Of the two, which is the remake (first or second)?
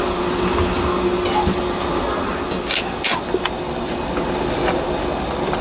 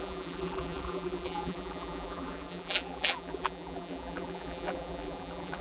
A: second